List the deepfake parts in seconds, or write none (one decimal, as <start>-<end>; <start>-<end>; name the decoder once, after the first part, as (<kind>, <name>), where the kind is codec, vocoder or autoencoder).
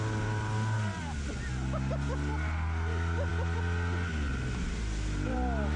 none